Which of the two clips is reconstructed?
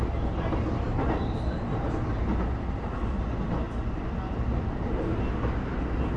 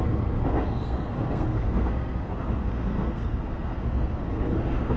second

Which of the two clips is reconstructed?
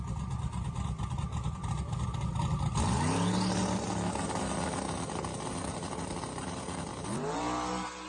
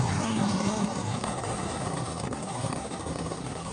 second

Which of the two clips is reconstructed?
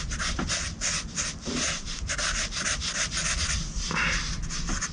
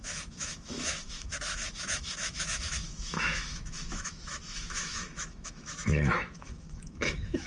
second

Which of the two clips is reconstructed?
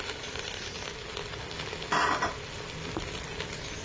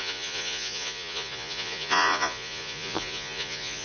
second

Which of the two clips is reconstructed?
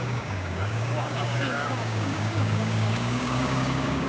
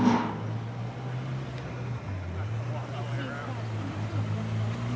first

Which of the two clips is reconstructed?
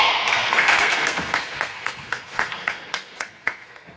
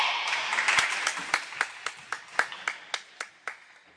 first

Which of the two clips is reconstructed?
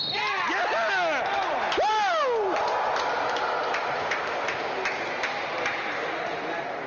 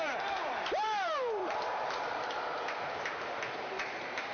second